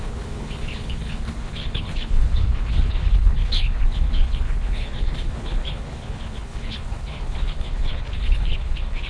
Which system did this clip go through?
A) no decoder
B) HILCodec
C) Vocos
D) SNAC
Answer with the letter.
B